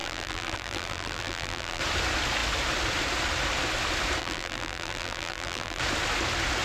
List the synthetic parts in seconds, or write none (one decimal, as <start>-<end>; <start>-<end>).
0.0-1.8; 4.2-5.8